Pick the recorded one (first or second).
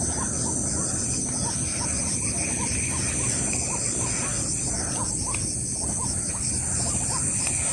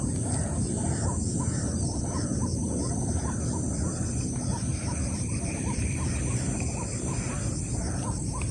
first